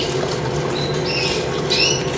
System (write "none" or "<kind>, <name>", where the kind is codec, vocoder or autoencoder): none